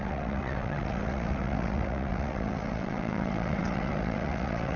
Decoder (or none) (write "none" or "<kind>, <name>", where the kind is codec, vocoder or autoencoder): vocoder, WaveNeXt